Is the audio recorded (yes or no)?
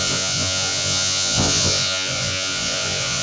no